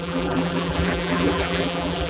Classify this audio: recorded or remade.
remade